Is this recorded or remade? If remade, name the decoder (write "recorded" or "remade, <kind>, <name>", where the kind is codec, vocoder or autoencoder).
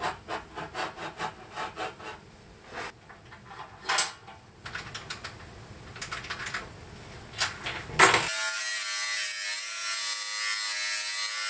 recorded